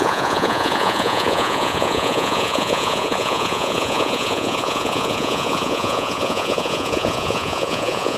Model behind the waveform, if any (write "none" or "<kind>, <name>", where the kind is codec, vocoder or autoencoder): vocoder, Vocos